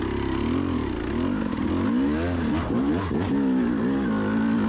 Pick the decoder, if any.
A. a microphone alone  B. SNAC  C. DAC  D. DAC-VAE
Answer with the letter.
A